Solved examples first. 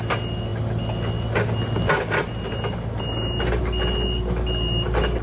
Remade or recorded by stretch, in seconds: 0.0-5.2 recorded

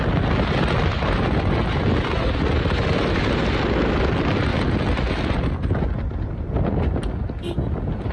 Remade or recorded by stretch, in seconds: 0.0-8.1 recorded

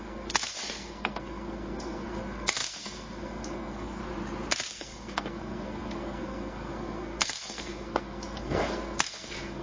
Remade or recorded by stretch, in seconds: 0.0-4.0 remade; 4.0-4.7 recorded; 4.7-9.6 remade

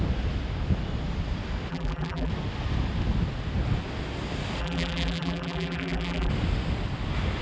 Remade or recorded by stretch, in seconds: 0.0-1.7 recorded; 1.7-2.3 remade; 2.3-4.6 recorded; 4.6-6.3 remade; 6.3-7.4 recorded

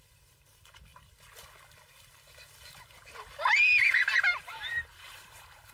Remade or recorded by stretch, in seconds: 0.0-0.9 remade; 0.9-4.3 recorded; 4.3-5.7 remade

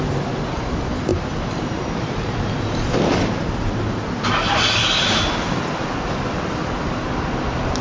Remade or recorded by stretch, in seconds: 0.0-7.8 recorded

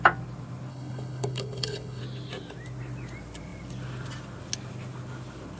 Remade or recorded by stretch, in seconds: 0.0-0.7 recorded; 0.7-2.0 remade; 2.0-5.6 recorded